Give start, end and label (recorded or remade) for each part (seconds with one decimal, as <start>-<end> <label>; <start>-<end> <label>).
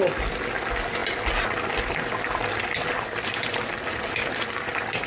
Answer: 0.0-5.1 recorded